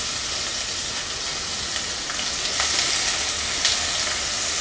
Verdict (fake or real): real